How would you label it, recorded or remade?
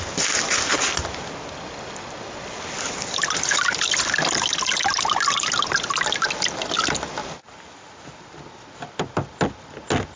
recorded